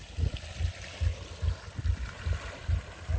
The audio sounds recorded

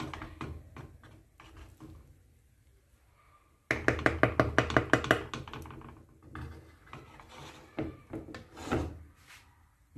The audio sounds recorded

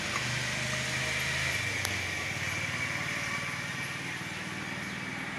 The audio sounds recorded